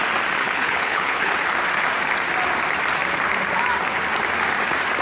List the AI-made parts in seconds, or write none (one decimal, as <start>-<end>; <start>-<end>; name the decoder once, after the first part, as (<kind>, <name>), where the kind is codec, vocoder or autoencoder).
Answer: 0.4-1.3 (codec, HILCodec)

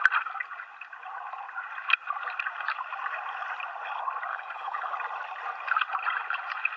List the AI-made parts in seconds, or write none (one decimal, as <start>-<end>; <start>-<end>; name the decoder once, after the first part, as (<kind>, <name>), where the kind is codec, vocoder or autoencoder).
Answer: 4.3-4.9 (codec, HILCodec)

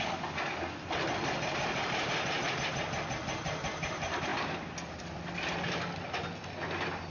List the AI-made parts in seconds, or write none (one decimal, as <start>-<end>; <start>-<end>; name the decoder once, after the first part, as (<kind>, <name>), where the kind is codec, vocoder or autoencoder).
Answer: none

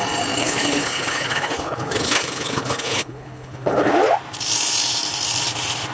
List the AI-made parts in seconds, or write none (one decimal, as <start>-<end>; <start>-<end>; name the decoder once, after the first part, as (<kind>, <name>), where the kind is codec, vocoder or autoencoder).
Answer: 0.4-3.9 (codec, HILCodec)

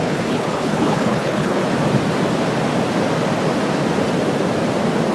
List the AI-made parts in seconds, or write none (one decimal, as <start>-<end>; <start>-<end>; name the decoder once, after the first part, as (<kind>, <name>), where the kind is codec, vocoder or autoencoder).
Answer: 0.0-1.6 (codec, HILCodec)

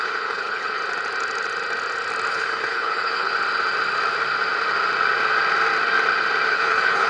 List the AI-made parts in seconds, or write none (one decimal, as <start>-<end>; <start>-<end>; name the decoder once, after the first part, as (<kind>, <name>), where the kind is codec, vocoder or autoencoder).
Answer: 0.0-0.8 (codec, HILCodec); 2.3-3.3; 6.5-7.1

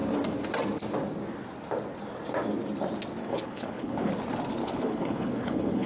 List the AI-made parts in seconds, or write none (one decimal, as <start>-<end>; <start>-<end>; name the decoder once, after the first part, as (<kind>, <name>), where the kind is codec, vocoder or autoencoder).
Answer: 3.2-4.1 (codec, HILCodec); 4.6-5.9